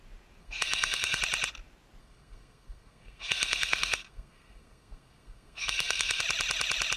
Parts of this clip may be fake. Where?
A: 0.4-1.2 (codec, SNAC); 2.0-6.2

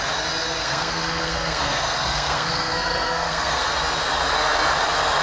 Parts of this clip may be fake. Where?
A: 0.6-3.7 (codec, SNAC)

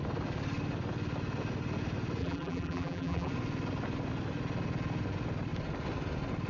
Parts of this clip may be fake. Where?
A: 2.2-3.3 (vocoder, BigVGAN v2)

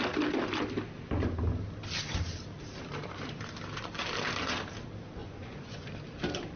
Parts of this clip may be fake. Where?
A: 5.2-5.9 (vocoder, Vocos)

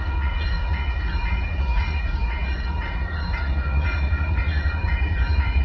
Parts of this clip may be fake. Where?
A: 0.0-5.6 (vocoder, Vocos)

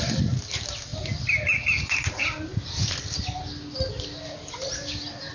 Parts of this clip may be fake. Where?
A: none